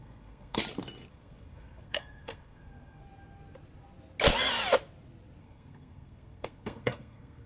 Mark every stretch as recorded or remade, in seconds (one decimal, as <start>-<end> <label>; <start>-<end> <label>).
0.0-0.6 remade; 0.6-1.1 recorded; 1.1-3.0 remade; 3.0-5.4 recorded; 5.4-7.5 remade